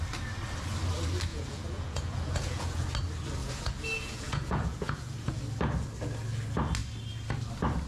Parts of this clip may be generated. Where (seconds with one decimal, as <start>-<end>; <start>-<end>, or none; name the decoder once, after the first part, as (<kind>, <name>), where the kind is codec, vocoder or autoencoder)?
1.3-2.9 (vocoder, Vocos); 3.4-5.4